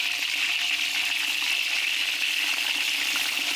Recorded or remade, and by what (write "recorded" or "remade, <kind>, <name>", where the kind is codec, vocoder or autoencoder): recorded